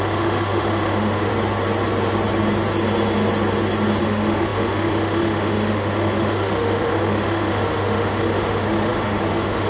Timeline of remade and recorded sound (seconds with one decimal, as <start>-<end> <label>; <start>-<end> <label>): 0.0-1.3 remade; 1.3-4.0 recorded; 4.0-9.7 remade